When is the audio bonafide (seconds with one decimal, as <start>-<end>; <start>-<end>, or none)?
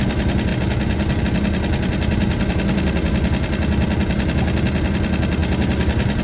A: 0.0-6.2